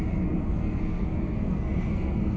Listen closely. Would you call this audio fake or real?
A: fake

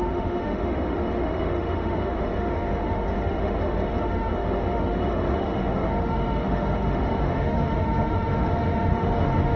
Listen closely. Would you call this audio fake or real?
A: fake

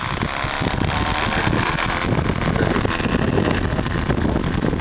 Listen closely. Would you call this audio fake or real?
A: real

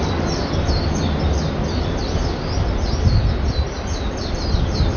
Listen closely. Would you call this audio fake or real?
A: real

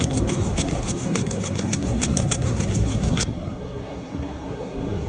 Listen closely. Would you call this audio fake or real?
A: fake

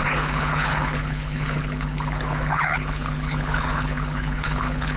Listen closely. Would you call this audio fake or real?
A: fake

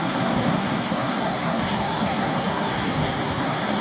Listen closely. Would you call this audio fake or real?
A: fake